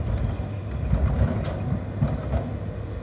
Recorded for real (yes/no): yes